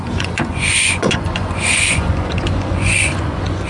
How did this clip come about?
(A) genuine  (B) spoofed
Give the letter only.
B